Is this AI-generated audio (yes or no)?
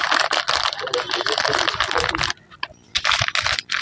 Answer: no